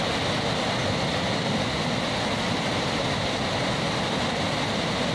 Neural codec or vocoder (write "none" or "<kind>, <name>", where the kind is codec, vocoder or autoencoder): none